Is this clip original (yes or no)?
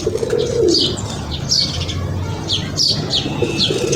yes